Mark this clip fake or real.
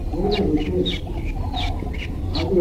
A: real